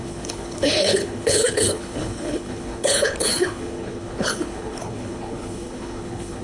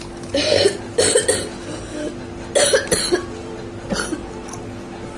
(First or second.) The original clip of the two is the second